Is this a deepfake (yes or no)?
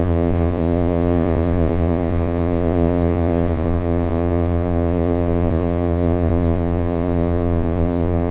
yes